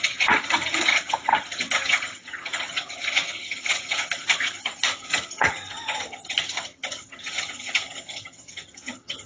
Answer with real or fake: fake